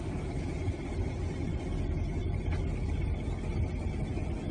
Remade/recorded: recorded